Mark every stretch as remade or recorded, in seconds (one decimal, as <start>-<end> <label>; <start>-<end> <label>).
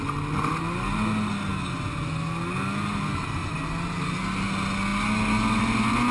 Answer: 0.0-6.1 recorded